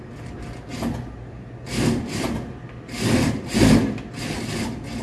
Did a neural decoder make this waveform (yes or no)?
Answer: no